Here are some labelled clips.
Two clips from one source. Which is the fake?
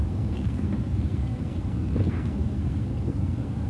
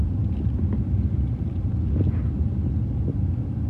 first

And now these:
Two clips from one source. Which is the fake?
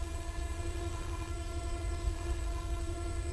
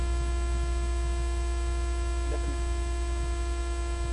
first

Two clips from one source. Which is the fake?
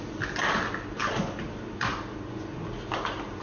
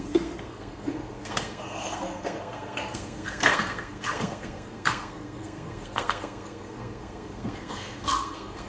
second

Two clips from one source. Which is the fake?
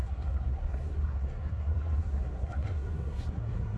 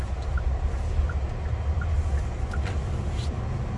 first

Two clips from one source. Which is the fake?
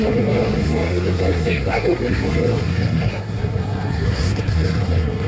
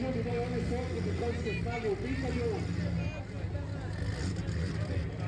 first